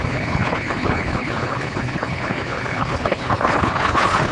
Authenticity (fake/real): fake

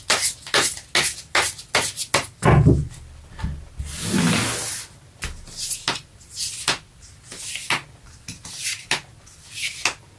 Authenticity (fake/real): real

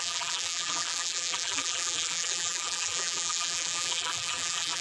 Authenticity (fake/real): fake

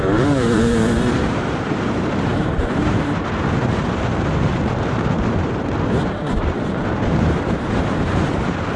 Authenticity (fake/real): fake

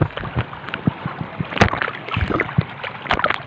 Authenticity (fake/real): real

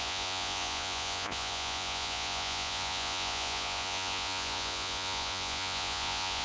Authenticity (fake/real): fake